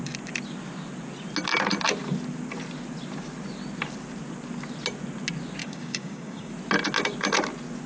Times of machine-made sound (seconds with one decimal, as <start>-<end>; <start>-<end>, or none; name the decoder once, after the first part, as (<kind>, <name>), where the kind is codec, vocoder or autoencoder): 5.6-6.5 (codec, DAC)